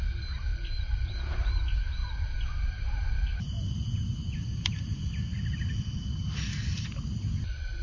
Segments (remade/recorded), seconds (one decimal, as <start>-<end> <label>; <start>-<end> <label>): 0.0-7.8 recorded